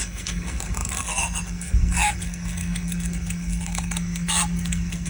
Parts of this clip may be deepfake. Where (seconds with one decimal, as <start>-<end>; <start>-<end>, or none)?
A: 0.0-5.1